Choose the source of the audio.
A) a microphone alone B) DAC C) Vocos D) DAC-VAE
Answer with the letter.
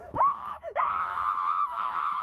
D